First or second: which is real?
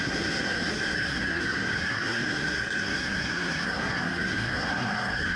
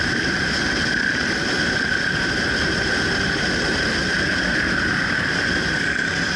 second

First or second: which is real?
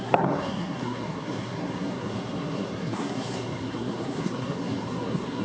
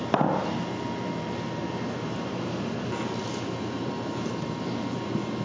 second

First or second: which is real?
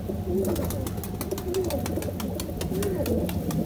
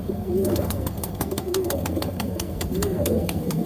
first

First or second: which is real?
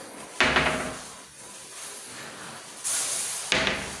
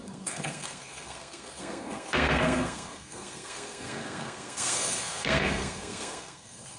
first